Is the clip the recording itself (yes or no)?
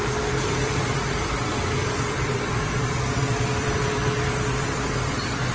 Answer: no